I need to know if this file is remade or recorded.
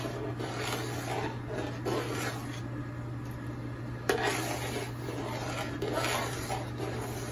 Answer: recorded